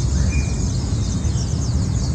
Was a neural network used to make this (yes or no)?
no